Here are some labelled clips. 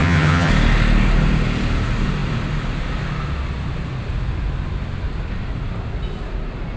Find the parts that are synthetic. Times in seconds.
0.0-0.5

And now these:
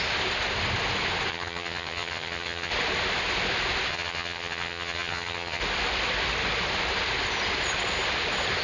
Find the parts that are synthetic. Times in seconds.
1.3-2.7; 3.9-5.6

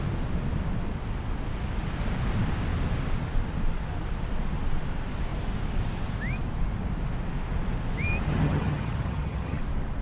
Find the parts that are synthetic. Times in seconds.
8.3-9.6